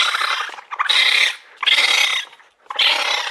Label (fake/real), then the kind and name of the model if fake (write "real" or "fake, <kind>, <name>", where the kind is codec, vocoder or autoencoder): real